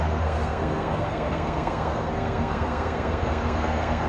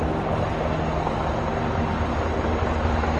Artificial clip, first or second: first